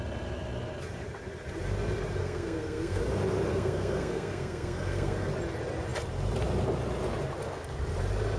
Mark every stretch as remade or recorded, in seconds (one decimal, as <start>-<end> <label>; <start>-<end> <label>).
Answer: 0.0-2.2 recorded; 2.2-3.0 remade; 3.0-3.5 recorded; 3.5-5.3 remade; 5.3-8.4 recorded